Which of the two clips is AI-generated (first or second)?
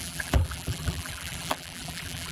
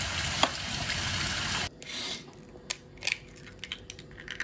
first